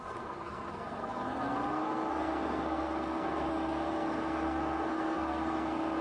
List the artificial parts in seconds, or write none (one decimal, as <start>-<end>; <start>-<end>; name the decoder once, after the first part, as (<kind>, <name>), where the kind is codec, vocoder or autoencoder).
0.0-6.0 (codec, SNAC)